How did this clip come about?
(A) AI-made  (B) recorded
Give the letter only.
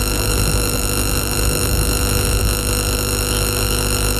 A